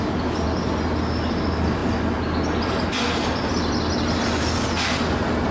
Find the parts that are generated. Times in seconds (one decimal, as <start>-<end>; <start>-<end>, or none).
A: none